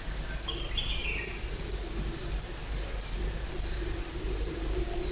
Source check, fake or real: real